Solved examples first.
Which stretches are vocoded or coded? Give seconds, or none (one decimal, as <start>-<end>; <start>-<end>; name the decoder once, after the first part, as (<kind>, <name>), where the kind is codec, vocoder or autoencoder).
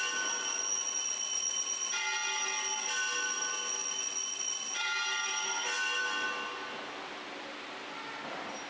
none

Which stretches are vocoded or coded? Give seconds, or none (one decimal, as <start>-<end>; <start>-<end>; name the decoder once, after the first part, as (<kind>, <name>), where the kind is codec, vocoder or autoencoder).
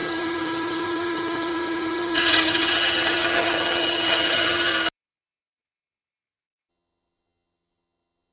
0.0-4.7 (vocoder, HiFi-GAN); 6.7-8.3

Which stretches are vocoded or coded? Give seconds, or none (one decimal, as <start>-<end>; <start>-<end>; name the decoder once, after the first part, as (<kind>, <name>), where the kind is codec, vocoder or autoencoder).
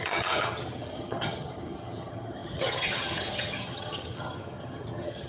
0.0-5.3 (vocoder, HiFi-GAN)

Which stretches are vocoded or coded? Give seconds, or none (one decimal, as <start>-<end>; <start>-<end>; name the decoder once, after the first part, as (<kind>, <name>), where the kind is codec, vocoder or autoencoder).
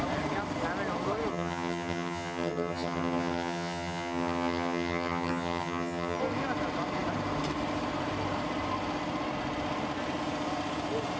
1.3-6.2 (vocoder, HiFi-GAN)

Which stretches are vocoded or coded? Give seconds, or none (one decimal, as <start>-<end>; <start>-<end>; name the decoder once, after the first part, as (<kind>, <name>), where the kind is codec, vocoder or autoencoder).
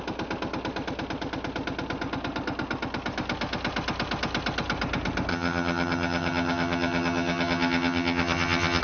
5.3-8.8 (vocoder, HiFi-GAN)